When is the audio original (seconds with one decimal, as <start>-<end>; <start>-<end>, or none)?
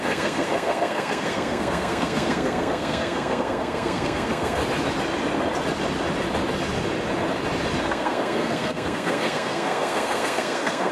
4.6-7.8